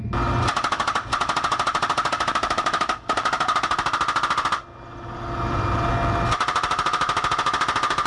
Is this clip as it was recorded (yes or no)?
yes